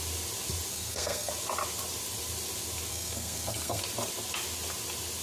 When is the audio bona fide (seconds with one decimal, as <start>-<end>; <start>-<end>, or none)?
0.0-0.7; 1.3-2.9; 3.8-5.2